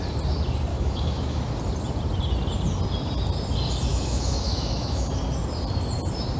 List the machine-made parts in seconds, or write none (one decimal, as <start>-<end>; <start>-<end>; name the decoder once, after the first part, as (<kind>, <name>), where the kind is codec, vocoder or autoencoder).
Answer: 0.7-1.4 (autoencoder, DAC-VAE); 3.9-5.1

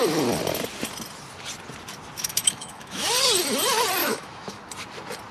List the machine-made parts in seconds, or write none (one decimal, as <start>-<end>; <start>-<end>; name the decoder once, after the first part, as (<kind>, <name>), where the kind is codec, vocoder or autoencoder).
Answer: 2.2-3.1 (autoencoder, DAC-VAE); 4.0-4.6

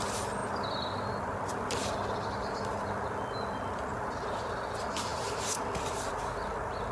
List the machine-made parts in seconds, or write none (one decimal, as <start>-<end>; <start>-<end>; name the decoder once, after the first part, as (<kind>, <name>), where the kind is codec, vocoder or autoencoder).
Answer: none

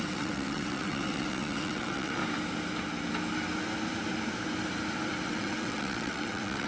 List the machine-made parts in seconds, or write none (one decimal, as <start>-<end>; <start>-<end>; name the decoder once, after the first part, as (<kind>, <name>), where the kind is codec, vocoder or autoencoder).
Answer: 0.0-2.2 (vocoder, WaveNeXt); 5.3-6.7